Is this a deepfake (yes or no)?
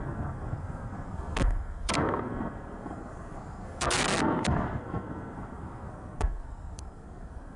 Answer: yes